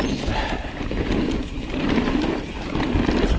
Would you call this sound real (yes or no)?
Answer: yes